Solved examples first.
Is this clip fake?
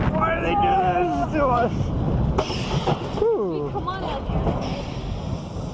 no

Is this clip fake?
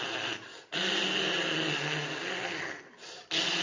no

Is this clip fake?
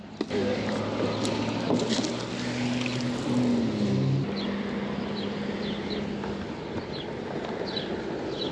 no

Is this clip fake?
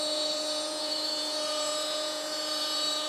yes